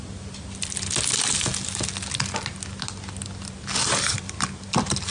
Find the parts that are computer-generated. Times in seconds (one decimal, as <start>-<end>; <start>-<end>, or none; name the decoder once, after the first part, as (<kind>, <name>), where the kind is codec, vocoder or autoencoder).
none